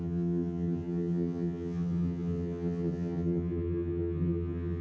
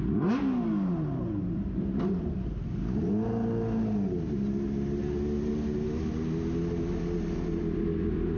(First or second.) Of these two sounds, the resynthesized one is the first